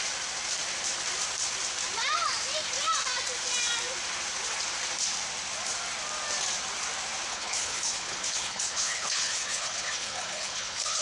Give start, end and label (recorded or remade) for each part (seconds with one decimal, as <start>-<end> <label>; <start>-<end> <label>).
0.0-7.3 recorded; 7.3-11.0 remade